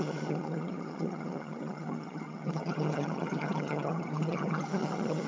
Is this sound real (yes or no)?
no